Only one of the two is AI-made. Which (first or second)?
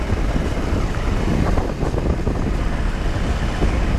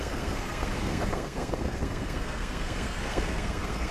second